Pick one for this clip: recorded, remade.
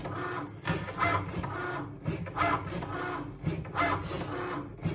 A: recorded